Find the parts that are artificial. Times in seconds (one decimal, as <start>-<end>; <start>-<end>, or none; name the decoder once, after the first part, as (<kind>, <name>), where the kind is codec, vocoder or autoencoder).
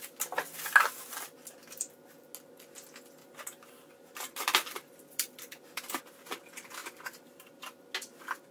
1.6-2.2 (vocoder, BigVGAN v2); 3.2-6.0; 6.8-7.8